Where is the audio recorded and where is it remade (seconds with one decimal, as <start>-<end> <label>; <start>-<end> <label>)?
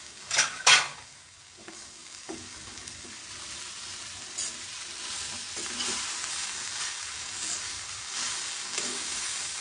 0.0-3.2 remade; 3.2-6.3 recorded; 6.3-9.6 remade